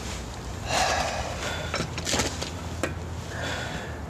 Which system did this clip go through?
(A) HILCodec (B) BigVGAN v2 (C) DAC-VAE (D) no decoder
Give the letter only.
D